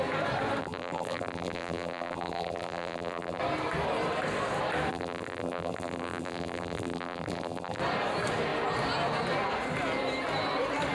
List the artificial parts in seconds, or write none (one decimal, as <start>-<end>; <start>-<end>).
0.6-3.4; 4.9-7.8